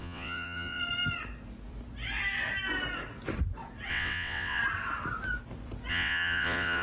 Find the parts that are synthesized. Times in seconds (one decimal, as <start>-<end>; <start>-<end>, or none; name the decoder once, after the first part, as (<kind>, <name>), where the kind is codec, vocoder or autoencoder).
0.0-0.8 (vocoder, WaveNeXt); 3.9-4.6; 5.9-6.8